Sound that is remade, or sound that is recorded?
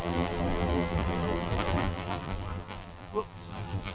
remade